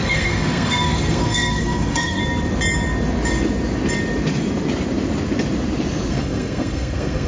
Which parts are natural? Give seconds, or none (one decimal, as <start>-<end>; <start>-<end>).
2.2-6.1